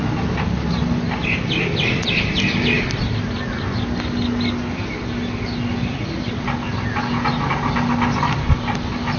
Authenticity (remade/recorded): recorded